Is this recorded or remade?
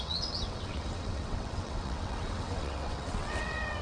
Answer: remade